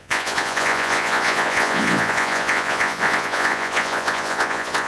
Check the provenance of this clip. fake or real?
fake